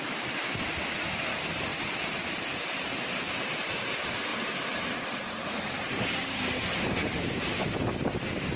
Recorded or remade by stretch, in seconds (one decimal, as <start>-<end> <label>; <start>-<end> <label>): 0.0-1.7 recorded; 1.7-3.7 remade; 3.7-4.3 recorded; 4.3-7.7 remade; 7.7-8.6 recorded